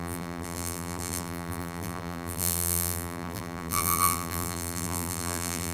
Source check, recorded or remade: remade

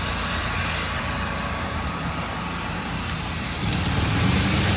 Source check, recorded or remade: remade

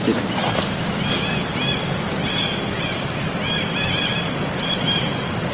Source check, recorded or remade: remade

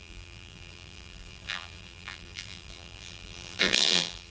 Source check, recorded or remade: remade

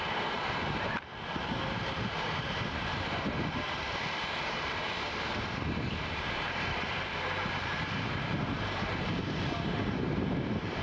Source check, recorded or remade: remade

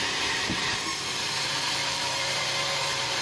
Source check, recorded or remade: remade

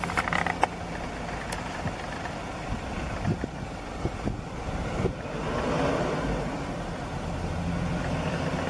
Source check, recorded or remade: recorded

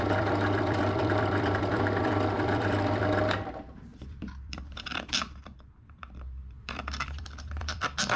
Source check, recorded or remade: remade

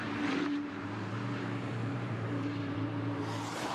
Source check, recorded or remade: remade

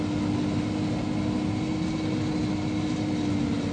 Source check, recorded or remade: recorded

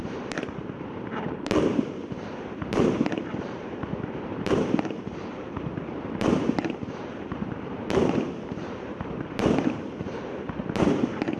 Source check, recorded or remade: remade